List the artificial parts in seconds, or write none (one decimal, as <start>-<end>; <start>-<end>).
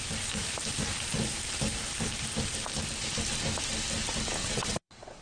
4.4-5.2